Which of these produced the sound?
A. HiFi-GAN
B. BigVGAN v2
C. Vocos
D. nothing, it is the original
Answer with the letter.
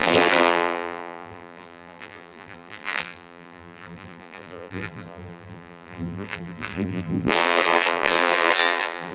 B